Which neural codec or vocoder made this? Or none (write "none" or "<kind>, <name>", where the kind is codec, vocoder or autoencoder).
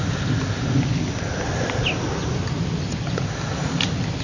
none